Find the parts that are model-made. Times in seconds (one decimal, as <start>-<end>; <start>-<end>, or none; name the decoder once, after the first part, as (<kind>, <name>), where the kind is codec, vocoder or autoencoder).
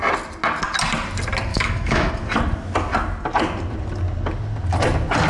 1.5-2.1 (autoencoder, DAC-VAE)